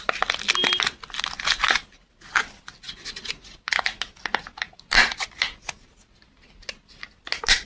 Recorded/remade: recorded